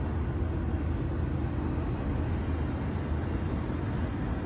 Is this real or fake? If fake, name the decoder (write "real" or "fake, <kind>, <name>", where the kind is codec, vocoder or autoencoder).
real